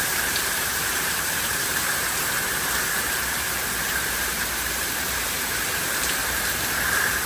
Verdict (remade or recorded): remade